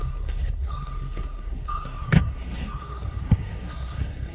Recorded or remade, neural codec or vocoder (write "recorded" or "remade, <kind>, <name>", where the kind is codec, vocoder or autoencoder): remade, codec, SNAC